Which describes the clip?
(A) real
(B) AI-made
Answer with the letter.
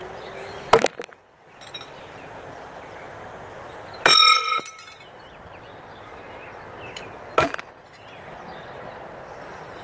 A